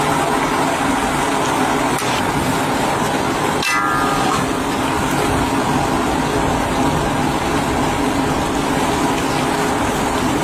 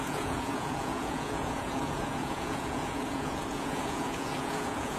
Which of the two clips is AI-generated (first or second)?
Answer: second